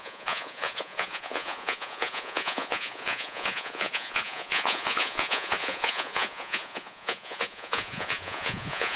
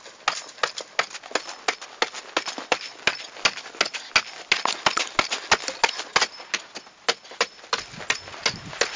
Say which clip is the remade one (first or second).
first